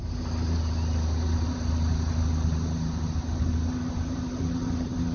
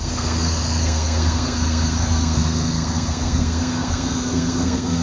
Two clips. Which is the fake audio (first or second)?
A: second